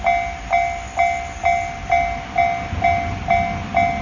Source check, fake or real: real